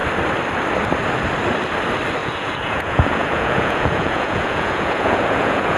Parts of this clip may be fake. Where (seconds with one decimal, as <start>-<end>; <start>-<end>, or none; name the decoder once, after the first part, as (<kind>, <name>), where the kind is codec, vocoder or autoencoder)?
2.2-5.8 (vocoder, Vocos)